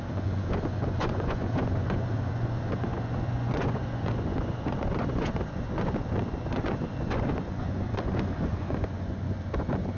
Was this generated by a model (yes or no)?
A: yes